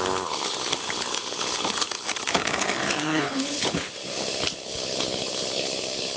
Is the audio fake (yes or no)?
yes